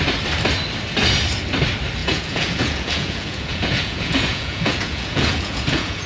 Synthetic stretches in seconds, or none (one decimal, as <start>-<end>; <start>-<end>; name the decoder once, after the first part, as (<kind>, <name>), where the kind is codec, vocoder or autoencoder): 2.0-6.1 (vocoder, Vocos)